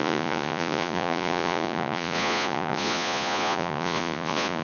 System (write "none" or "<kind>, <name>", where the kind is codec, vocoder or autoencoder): vocoder, Vocos